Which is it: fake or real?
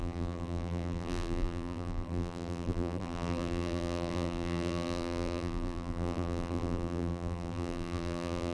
fake